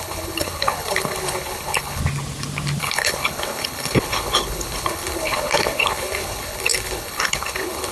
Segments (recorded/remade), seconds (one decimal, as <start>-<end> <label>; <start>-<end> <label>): 0.0-2.0 remade; 2.0-2.8 recorded; 2.8-7.9 remade